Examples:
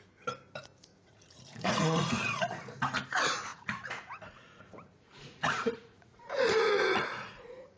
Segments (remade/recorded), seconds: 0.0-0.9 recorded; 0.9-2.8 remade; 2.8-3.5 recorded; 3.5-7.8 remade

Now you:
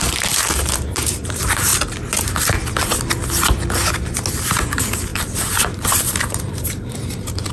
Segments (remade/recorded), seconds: 0.0-1.7 remade; 1.7-4.3 recorded; 4.3-7.5 remade

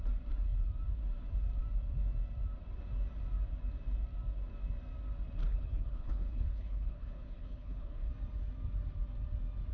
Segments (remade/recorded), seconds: 0.0-5.4 recorded; 5.4-8.1 remade; 8.1-9.7 recorded

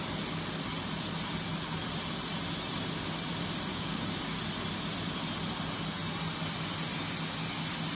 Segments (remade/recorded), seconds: 0.0-3.7 recorded; 3.7-4.4 remade; 4.4-7.9 recorded

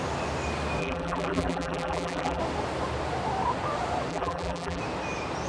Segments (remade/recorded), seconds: 0.0-0.8 recorded; 0.8-2.4 remade; 2.4-4.1 recorded; 4.1-4.8 remade; 4.8-5.5 recorded

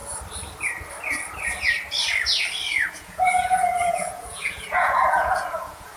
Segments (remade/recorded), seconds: 0.0-2.9 recorded; 2.9-6.0 remade

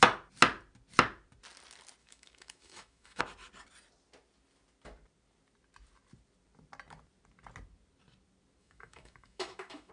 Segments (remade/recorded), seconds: 0.0-2.0 recorded; 2.0-3.2 remade; 3.2-8.6 recorded; 8.6-9.9 remade

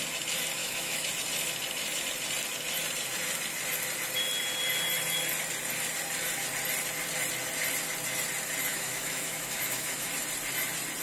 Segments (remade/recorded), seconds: 0.0-0.6 recorded; 0.6-1.1 remade; 1.1-8.7 recorded; 8.7-10.1 remade; 10.1-11.0 recorded